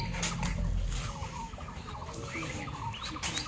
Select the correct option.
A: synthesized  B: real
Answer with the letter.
B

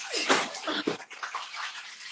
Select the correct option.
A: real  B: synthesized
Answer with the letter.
A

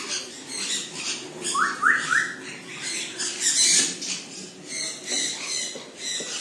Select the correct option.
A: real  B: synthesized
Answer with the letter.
A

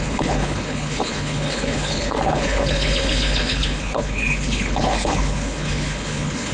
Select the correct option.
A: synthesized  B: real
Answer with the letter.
A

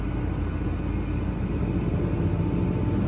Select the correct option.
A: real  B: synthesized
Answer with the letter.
A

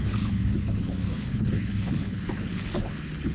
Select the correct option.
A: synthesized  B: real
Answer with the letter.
A